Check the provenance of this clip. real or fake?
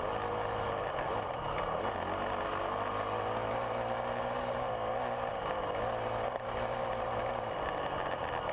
real